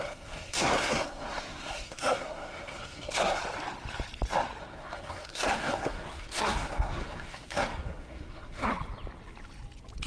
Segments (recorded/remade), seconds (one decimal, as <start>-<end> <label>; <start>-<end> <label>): 0.0-3.4 remade; 3.4-4.6 recorded; 4.6-8.7 remade; 8.7-10.1 recorded